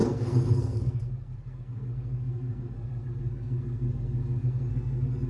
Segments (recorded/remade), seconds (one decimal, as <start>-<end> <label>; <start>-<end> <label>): 0.0-5.3 remade